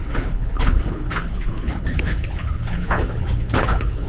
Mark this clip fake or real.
fake